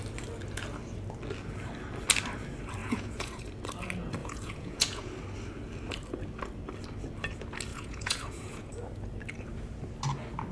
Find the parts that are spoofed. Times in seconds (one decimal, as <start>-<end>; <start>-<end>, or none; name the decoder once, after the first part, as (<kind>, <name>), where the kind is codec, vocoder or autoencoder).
2.8-3.4 (vocoder, Vocos); 4.2-5.1; 7.7-8.7